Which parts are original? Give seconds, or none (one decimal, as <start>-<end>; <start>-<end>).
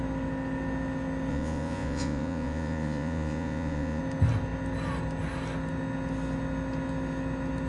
0.0-1.3; 4.0-7.7